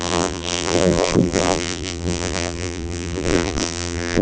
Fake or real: fake